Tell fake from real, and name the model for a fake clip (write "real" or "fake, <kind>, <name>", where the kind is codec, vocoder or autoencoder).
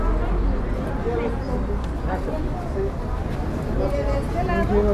real